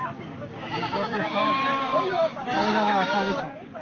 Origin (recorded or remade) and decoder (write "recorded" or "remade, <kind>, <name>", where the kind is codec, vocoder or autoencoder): remade, codec, DAC